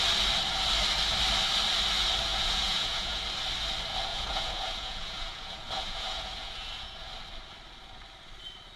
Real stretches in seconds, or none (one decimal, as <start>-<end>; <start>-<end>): 0.0-2.3; 3.2-4.1; 7.1-8.8